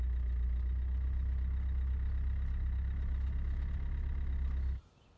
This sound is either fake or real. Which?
real